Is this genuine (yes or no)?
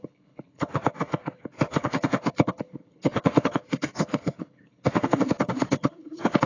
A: no